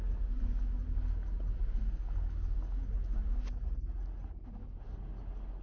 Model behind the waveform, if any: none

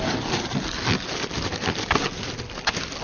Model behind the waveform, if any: none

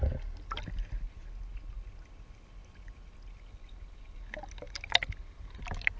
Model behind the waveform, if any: none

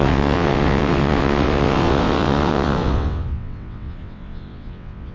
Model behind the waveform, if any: vocoder, WaveNeXt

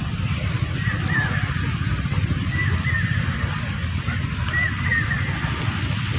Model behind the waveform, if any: none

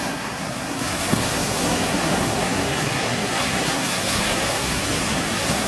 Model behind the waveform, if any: codec, SNAC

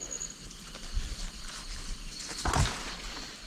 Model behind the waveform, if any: none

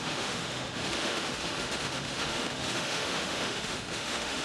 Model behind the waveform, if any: autoencoder, DAC-VAE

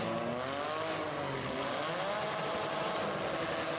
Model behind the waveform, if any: none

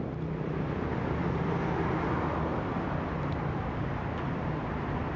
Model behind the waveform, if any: none